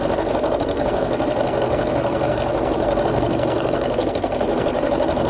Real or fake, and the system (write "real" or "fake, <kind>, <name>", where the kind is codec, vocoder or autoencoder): fake, codec, SNAC